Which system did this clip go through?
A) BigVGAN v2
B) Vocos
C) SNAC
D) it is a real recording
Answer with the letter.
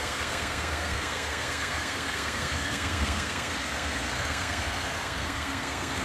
C